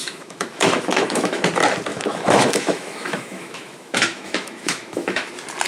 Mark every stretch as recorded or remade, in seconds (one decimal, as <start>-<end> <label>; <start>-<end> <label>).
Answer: 0.0-1.4 remade; 1.4-1.9 recorded; 1.9-5.3 remade; 5.3-5.7 recorded